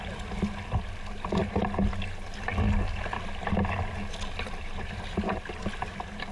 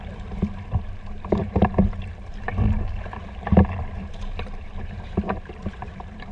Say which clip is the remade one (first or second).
second